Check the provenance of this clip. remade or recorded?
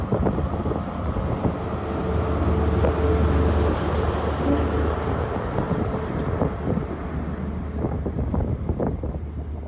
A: recorded